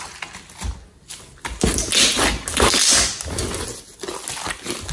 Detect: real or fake real